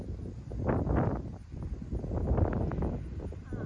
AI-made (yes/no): no